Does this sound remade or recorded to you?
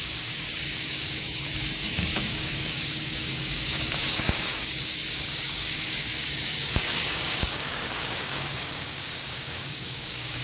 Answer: remade